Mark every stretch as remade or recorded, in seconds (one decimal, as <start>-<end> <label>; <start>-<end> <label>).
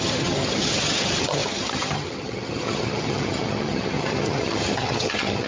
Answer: 0.0-5.5 remade